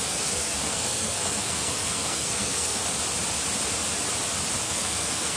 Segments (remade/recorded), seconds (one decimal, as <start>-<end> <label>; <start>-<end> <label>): 0.0-2.8 remade; 2.8-4.6 recorded; 4.6-5.4 remade